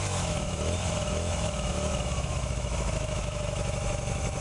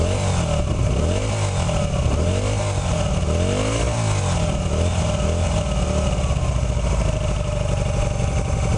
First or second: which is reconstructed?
first